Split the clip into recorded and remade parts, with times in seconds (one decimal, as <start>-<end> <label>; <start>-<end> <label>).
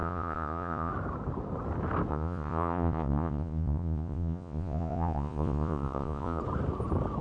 0.0-0.9 remade; 0.9-2.1 recorded; 2.1-6.4 remade; 6.4-7.2 recorded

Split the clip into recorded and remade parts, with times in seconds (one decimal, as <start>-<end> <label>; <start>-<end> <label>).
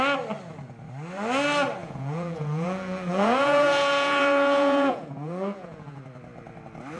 0.0-1.8 recorded; 1.8-6.0 remade; 6.0-7.0 recorded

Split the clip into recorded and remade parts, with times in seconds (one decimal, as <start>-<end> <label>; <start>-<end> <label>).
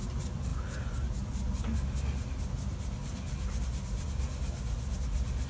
0.0-5.5 recorded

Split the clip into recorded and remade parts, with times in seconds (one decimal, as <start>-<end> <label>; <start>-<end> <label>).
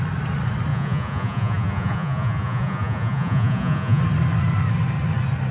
0.0-0.7 recorded; 0.7-4.0 remade; 4.0-5.5 recorded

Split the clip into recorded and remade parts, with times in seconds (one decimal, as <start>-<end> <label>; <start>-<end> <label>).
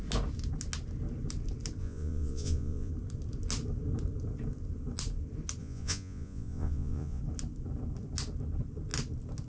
0.0-1.8 recorded; 1.8-2.9 remade; 2.9-5.6 recorded; 5.6-7.2 remade; 7.2-9.5 recorded